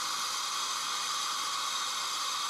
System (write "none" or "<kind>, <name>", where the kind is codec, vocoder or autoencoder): none